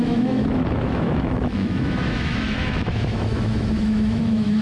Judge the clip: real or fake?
fake